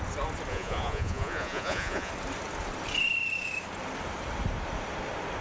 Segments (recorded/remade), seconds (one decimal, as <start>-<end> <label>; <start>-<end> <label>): 0.0-0.5 recorded; 0.5-2.1 remade; 2.1-5.4 recorded